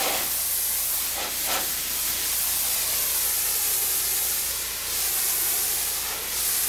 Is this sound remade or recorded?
recorded